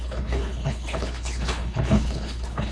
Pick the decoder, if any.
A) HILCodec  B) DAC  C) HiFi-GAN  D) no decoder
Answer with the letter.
A